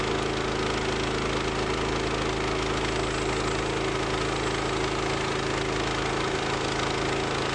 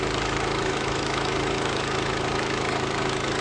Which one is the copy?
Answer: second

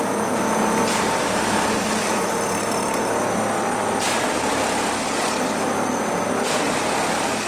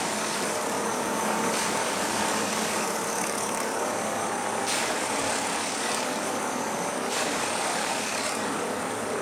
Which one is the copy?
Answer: second